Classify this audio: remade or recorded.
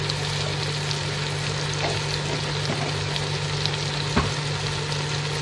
recorded